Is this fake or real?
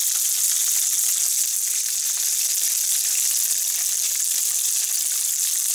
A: real